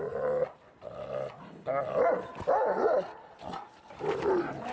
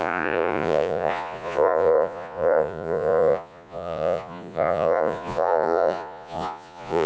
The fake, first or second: second